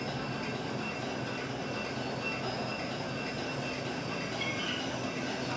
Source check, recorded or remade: recorded